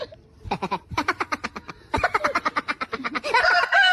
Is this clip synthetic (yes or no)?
yes